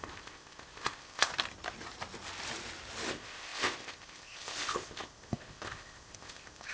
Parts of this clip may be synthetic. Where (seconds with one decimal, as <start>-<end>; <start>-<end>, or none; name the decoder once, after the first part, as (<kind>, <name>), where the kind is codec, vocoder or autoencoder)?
0.0-1.3 (codec, ZipCodec); 3.1-6.7